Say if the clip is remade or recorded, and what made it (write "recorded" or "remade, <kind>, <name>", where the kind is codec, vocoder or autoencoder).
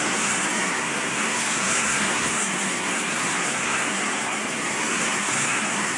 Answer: remade, codec, SNAC